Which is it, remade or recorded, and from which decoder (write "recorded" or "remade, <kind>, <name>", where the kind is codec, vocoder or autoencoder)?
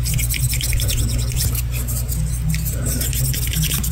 recorded